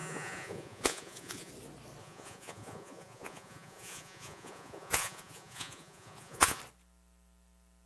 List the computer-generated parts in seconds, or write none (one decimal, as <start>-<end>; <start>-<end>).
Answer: 0.0-1.5; 2.0-6.6